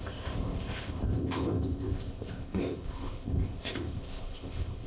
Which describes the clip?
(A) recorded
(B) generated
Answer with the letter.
B